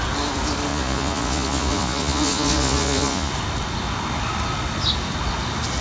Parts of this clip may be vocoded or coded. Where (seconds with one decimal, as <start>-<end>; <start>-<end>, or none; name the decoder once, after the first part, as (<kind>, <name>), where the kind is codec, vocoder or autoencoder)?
0.7-3.3 (vocoder, Vocos)